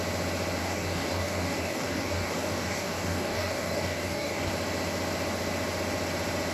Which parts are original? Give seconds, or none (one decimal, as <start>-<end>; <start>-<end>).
0.0-0.6; 4.5-6.5